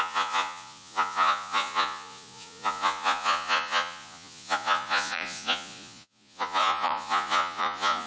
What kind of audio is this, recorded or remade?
remade